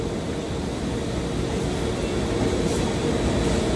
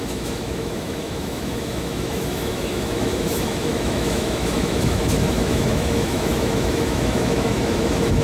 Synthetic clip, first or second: second